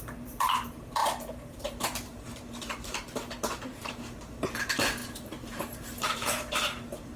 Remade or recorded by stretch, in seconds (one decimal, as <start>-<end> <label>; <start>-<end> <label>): 0.0-7.2 remade